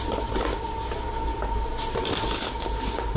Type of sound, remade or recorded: recorded